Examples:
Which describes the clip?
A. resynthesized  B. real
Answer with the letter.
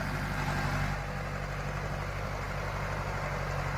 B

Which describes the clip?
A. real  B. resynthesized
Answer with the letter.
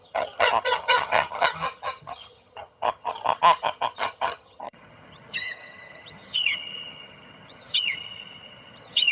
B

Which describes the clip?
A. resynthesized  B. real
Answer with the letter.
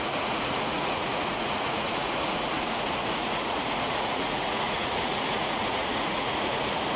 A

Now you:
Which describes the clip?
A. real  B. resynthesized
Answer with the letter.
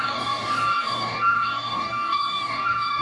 B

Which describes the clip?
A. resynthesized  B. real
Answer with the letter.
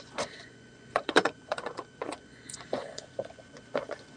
A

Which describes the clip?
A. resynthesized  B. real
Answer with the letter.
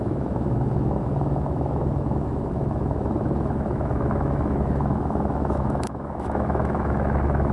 A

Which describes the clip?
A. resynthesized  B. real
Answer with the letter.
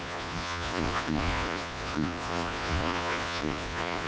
A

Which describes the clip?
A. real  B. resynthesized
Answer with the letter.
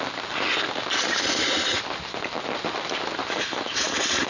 A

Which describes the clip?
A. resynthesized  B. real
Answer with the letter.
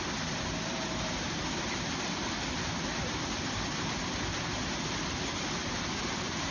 B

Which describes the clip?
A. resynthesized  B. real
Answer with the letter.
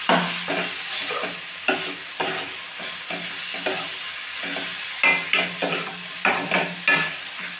B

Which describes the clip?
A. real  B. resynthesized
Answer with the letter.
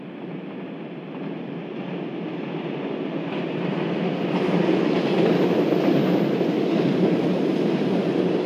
A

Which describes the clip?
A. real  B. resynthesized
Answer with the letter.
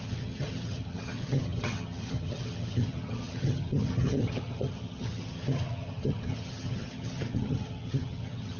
B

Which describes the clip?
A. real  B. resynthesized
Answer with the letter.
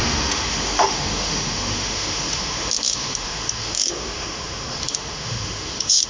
B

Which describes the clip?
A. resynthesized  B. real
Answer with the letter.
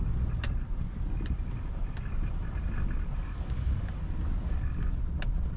B